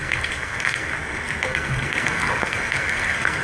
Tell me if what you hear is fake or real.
fake